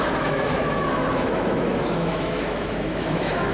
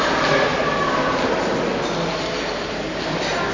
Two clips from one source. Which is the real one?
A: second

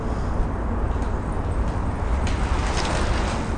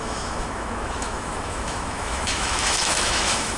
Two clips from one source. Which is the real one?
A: first